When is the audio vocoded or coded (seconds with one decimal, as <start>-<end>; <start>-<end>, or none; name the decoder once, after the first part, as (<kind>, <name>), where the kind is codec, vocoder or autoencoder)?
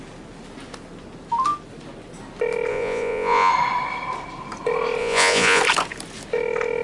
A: 2.7-3.5 (vocoder, Vocos); 5.0-5.6